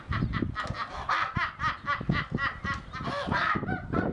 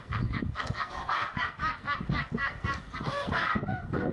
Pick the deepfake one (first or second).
second